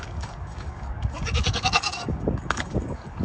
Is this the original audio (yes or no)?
no